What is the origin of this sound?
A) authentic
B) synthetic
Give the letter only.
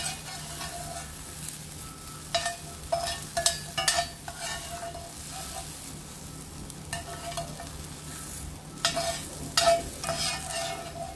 A